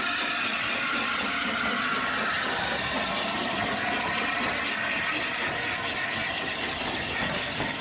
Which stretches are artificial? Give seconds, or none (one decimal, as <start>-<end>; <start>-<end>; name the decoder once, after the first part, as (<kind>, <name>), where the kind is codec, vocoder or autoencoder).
none